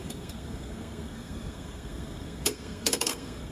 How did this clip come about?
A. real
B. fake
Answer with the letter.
B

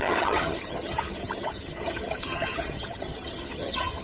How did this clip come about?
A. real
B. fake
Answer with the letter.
B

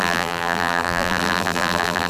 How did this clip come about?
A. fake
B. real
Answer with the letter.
A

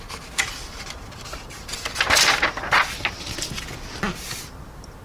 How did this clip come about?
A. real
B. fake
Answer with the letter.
A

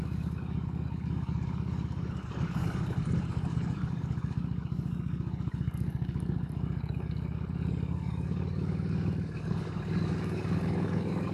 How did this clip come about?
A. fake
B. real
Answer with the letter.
A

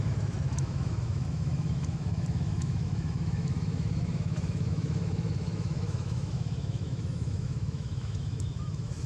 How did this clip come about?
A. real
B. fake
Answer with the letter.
B